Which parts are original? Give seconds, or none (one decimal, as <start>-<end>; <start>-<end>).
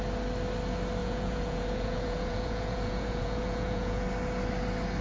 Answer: 0.0-1.0; 4.0-5.0